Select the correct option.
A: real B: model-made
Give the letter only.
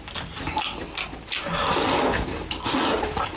A